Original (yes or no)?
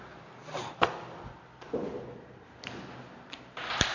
yes